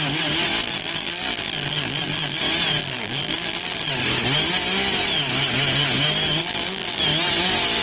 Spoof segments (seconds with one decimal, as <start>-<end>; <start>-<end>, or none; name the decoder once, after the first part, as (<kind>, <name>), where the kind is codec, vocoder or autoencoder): 0.6-2.4 (vocoder, BigVGAN v2); 2.8-3.9; 6.4-7.0